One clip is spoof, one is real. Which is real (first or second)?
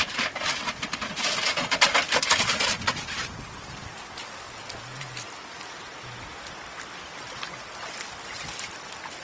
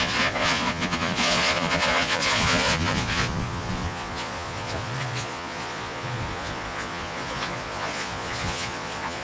first